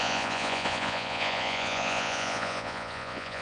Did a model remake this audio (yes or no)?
yes